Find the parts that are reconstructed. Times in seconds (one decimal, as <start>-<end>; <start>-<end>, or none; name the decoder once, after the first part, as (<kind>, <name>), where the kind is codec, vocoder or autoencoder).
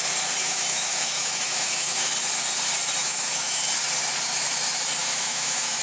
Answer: 0.4-2.1 (autoencoder, DAC-VAE); 3.0-3.6; 5.0-5.8